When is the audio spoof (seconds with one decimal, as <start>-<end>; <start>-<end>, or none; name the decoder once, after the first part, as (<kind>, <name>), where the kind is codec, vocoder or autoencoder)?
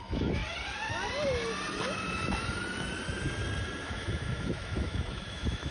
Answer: 0.0-0.4 (autoencoder, DAC-VAE); 3.8-5.7